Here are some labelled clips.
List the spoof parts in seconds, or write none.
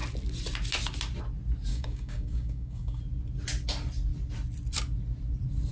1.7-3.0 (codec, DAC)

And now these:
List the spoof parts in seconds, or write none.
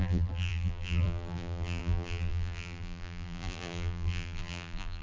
0.0-5.0 (vocoder, BigVGAN v2)